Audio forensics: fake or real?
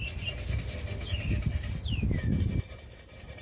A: real